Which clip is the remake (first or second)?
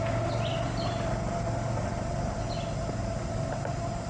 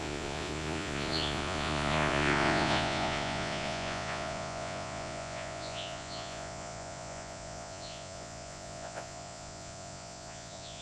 second